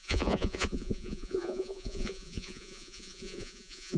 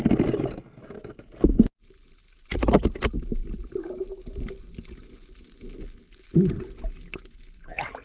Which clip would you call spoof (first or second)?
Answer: first